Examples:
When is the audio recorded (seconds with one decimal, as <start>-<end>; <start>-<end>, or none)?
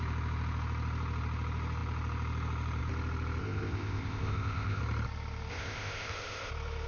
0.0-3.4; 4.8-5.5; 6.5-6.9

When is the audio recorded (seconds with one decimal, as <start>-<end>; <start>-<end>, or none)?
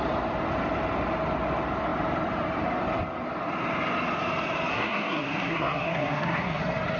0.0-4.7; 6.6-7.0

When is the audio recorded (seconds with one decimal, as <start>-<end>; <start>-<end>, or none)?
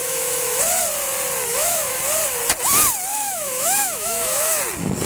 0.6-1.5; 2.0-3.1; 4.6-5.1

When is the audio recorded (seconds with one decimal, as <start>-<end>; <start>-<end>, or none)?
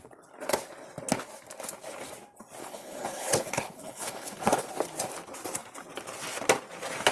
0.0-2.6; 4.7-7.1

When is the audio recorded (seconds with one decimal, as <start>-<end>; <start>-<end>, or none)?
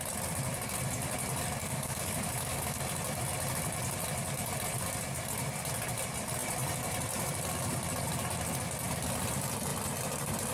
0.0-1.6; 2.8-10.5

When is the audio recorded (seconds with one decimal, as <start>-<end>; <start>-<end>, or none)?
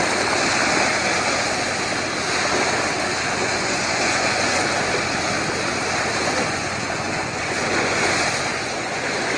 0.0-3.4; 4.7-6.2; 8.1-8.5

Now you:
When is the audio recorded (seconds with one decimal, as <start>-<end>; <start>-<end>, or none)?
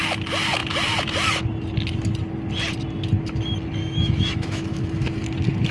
0.0-3.8; 5.1-5.7